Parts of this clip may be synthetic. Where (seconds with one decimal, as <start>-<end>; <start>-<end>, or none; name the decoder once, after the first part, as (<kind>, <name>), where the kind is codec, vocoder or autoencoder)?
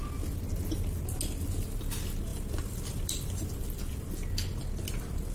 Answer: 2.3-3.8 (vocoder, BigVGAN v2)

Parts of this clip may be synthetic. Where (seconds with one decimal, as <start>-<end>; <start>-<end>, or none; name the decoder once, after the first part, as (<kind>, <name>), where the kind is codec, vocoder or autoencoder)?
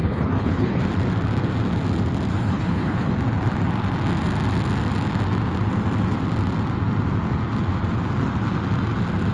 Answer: 0.0-0.8 (codec, HILCodec); 2.3-3.1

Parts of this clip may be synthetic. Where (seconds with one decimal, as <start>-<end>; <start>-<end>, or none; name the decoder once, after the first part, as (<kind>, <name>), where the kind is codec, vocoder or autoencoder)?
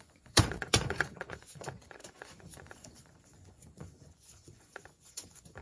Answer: 0.0-5.6 (vocoder, Vocos)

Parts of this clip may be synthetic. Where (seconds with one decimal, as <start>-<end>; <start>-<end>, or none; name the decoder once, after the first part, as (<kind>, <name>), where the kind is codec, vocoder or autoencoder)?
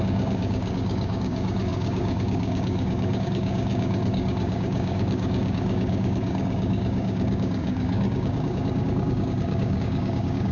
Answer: 0.0-10.5 (codec, DAC)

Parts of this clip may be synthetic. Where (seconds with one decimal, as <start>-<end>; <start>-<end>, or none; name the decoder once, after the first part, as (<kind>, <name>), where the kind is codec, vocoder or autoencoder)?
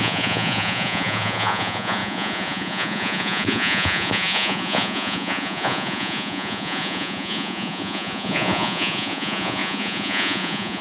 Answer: 0.0-10.8 (vocoder, Vocos)